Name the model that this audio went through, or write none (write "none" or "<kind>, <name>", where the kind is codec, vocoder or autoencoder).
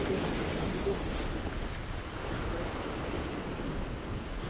none